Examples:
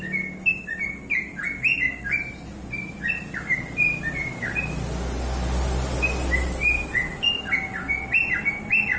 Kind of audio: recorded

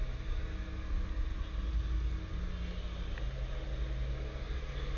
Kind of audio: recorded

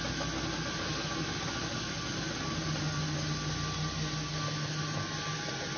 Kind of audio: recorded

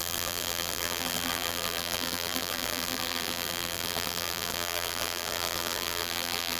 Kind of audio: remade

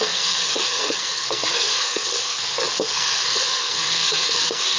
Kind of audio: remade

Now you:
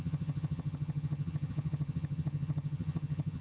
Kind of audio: remade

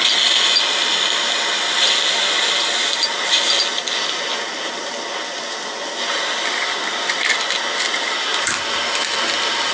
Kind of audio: recorded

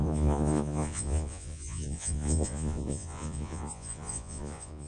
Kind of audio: remade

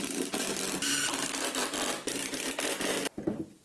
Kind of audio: recorded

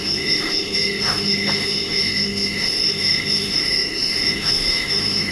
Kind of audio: remade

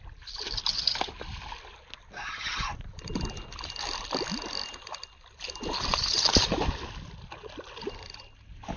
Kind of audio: recorded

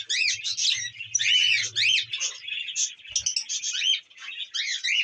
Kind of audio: recorded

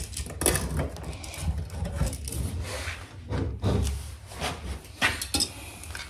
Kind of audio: recorded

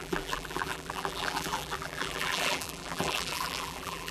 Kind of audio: remade